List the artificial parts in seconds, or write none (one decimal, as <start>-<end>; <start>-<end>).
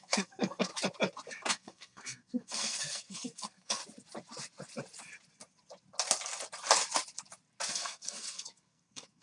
0.0-0.7; 1.5-3.8; 7.7-9.2